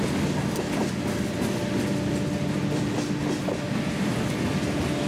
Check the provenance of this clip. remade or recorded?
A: recorded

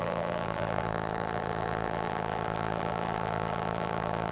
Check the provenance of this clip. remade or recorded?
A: remade